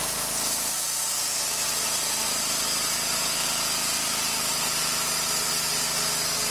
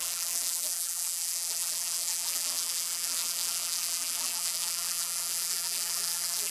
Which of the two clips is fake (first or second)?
second